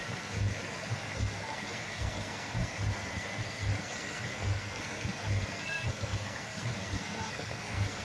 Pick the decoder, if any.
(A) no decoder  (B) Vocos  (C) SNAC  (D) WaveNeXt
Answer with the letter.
C